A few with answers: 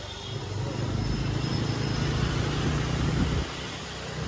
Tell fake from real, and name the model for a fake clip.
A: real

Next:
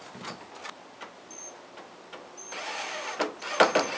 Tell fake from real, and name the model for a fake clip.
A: real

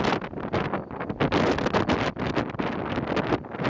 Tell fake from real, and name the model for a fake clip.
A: real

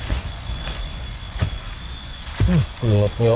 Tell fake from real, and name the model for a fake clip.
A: fake, vocoder, Vocos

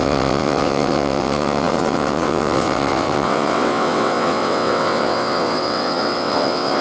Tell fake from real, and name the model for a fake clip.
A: fake, vocoder, WaveNeXt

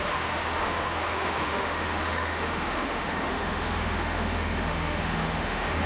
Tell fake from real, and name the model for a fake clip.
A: fake, autoencoder, DAC-VAE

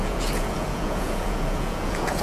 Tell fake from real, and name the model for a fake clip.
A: fake, vocoder, Vocos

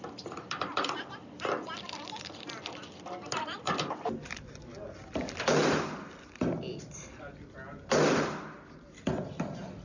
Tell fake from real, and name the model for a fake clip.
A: real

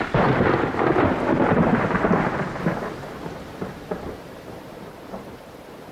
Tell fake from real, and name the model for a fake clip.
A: fake, vocoder, BigVGAN v2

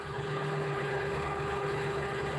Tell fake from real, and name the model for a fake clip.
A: fake, codec, HILCodec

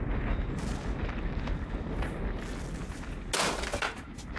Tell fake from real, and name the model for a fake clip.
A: real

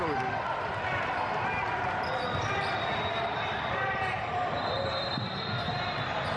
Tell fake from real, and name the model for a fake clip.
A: real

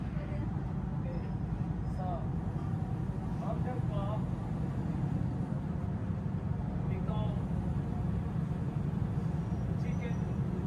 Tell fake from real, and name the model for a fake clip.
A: real